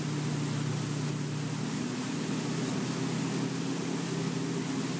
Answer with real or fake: real